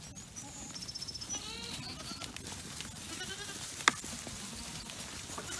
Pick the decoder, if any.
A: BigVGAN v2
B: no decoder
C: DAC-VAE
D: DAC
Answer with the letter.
B